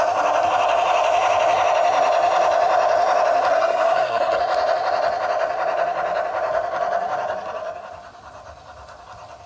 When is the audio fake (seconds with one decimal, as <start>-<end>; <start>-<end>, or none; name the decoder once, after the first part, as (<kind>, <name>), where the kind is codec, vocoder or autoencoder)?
3.5-4.4 (codec, SNAC)